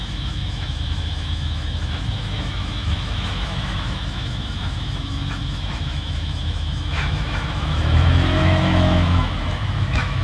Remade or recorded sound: remade